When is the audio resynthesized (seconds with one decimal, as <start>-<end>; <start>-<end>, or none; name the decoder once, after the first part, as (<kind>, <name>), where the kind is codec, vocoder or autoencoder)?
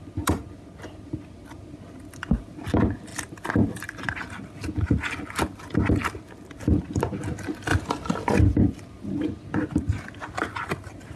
3.1-4.0 (vocoder, BigVGAN v2)